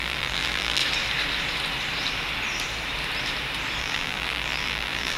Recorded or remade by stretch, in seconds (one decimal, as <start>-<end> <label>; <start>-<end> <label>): 0.0-0.8 remade; 0.8-3.8 recorded; 3.8-5.2 remade